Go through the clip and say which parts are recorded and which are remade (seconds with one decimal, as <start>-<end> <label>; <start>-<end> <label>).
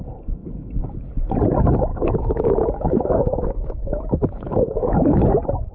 0.0-0.4 recorded; 0.4-1.1 remade; 1.1-1.9 recorded; 1.9-5.3 remade; 5.3-5.7 recorded